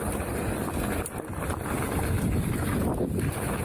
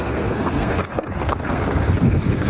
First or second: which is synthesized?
second